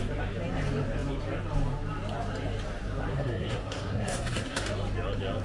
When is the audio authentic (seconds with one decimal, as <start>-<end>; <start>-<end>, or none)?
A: 0.0-3.1; 4.7-5.4